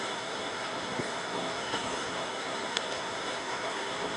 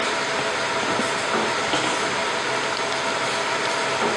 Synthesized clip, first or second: first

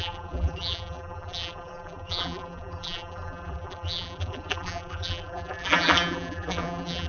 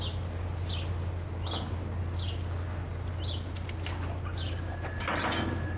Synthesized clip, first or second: first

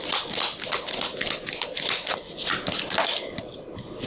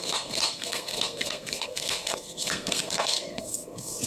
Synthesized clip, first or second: second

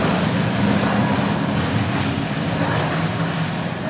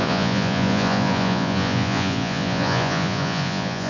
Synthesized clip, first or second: second